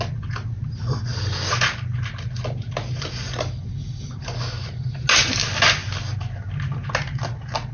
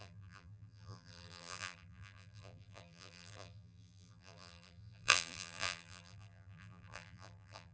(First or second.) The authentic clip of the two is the first